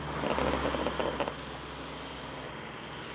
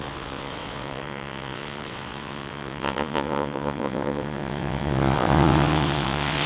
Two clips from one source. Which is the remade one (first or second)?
second